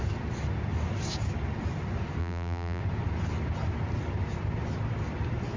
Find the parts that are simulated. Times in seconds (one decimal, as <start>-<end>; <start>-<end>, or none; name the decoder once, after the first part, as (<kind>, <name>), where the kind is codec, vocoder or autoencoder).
2.2-2.8 (vocoder, BigVGAN v2)